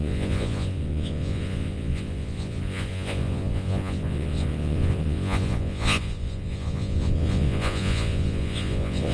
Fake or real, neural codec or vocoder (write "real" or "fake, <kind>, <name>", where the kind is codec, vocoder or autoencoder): fake, vocoder, Vocos